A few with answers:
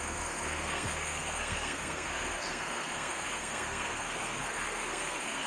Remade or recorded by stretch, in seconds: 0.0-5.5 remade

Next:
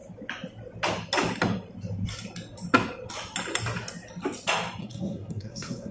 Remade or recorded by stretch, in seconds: 0.0-4.8 recorded; 4.8-5.9 remade

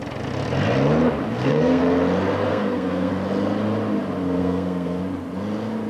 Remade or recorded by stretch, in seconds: 0.0-1.3 recorded; 1.3-1.8 remade; 1.8-2.5 recorded; 2.5-3.1 remade; 3.1-4.4 recorded; 4.4-5.0 remade; 5.0-5.9 recorded

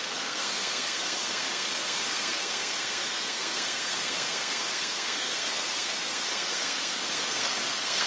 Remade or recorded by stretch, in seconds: 0.0-8.1 remade

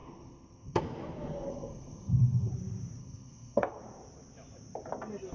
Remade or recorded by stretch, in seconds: 0.0-0.8 remade; 0.8-1.5 recorded; 1.5-2.5 remade; 2.5-3.0 recorded; 3.0-3.8 remade; 3.8-5.3 recorded

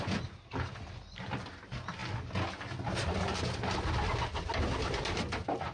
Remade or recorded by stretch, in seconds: 0.0-5.7 recorded

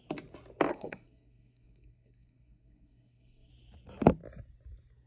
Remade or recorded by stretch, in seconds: 0.0-0.7 recorded; 0.7-3.5 remade; 3.5-5.1 recorded

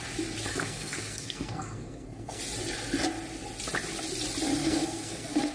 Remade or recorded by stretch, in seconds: 0.0-0.5 recorded; 0.5-2.4 remade; 2.4-4.6 recorded; 4.6-5.5 remade